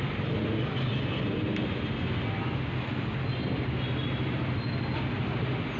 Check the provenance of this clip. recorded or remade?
recorded